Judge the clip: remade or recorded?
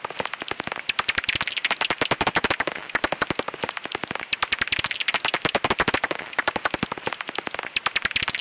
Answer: recorded